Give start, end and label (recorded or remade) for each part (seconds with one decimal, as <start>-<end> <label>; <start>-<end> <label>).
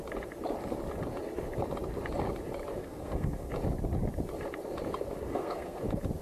0.0-2.8 recorded; 2.8-3.5 remade; 3.5-5.3 recorded; 5.3-5.8 remade; 5.8-6.2 recorded